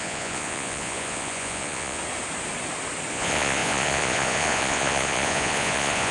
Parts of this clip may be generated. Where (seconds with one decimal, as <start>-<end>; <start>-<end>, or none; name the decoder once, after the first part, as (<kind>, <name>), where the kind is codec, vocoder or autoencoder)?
0.0-2.0 (vocoder, Vocos); 3.1-6.1